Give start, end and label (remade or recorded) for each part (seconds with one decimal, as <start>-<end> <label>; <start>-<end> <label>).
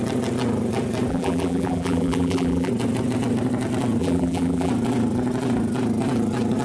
0.0-1.1 recorded; 1.1-2.7 remade; 2.7-4.0 recorded; 4.0-4.7 remade; 4.7-6.6 recorded